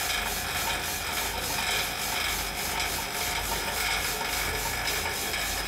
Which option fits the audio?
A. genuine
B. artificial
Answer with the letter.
A